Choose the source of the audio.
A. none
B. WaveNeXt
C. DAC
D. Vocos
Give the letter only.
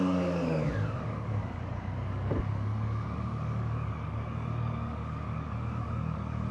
C